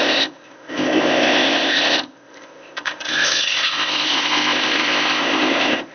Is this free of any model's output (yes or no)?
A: no